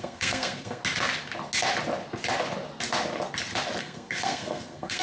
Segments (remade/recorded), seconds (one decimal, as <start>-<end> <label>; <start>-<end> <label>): 0.0-0.8 remade; 0.8-3.8 recorded; 3.8-5.0 remade